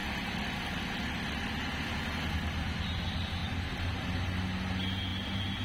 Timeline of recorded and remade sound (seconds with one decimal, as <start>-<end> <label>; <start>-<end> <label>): 0.0-3.4 recorded; 3.4-4.0 remade; 4.0-5.6 recorded